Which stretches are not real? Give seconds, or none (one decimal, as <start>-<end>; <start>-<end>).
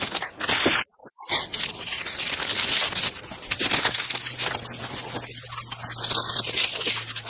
none